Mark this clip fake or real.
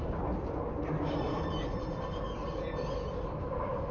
real